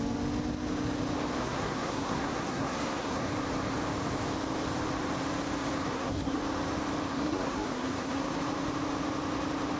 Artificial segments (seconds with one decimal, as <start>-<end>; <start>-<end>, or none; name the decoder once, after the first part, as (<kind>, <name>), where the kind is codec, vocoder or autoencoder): 1.4-3.3 (codec, SNAC); 5.9-6.4; 7.1-8.4